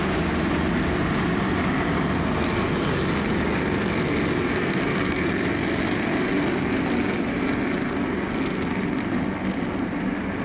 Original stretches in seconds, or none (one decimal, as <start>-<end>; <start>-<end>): 0.0-4.5; 5.3-10.4